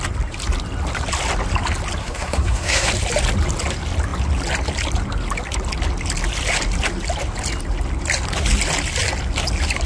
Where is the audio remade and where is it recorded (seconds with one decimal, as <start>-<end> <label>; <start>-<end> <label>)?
0.0-2.0 recorded; 2.0-2.9 remade; 2.9-9.9 recorded